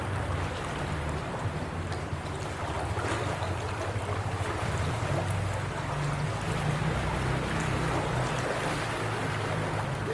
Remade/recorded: recorded